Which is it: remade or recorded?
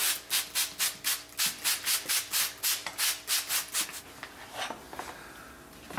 recorded